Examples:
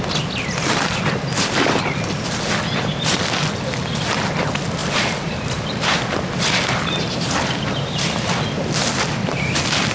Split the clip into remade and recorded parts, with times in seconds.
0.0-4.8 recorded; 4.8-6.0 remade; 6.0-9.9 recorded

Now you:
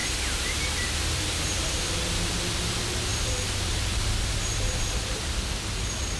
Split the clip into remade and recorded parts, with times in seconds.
0.0-1.8 remade; 1.8-3.1 recorded; 3.1-5.5 remade; 5.5-6.2 recorded

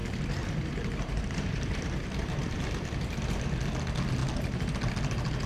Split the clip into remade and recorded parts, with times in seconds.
0.0-3.3 remade; 3.3-5.5 recorded

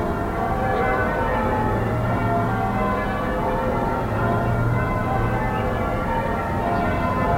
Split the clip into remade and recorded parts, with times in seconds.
0.0-2.2 remade; 2.2-3.4 recorded; 3.4-7.4 remade

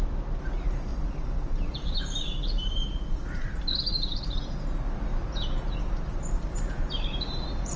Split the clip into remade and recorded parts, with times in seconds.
0.0-0.9 recorded; 0.9-4.2 remade; 4.2-5.1 recorded; 5.1-7.8 remade

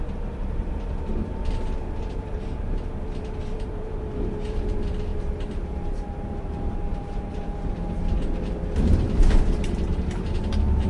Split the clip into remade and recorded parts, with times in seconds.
0.0-10.9 remade

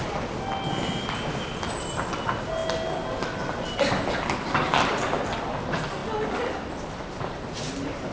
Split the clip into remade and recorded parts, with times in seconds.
0.0-8.1 recorded